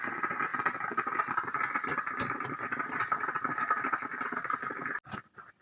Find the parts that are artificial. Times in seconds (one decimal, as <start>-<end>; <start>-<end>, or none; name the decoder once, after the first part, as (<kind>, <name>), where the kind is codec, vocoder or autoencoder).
none